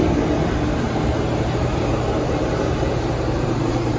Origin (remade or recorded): remade